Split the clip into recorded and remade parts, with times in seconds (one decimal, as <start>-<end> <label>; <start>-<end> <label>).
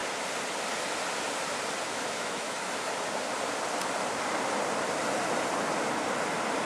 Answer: 0.0-1.9 recorded; 1.9-2.9 remade; 2.9-6.6 recorded